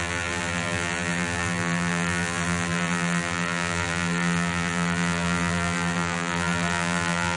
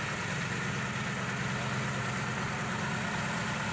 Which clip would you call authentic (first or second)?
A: second